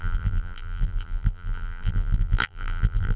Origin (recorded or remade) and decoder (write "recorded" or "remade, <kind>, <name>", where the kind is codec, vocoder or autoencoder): remade, vocoder, BigVGAN v2